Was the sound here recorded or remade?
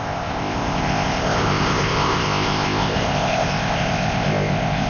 remade